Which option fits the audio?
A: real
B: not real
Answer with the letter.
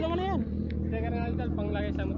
A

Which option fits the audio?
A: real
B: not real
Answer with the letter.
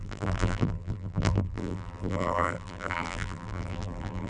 B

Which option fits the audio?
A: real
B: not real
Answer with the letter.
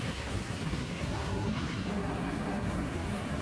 B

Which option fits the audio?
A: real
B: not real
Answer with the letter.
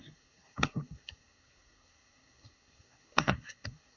B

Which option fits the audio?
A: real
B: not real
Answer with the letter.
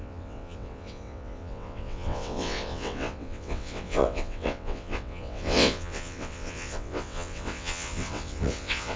B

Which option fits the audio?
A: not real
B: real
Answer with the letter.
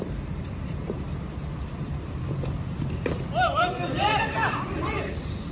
A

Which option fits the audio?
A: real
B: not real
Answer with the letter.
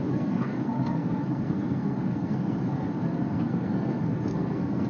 B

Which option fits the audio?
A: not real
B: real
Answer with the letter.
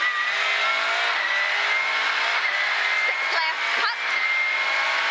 B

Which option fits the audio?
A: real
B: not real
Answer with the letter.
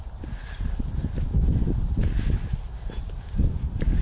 A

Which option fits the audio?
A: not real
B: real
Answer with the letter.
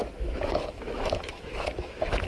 A